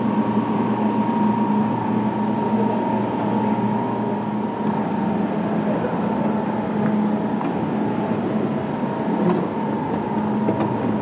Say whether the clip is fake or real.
real